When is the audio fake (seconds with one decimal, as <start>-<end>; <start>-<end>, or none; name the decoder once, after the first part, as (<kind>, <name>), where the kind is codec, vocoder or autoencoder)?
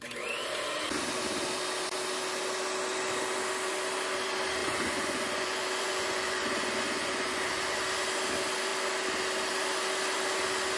4.6-7.5 (vocoder, Vocos)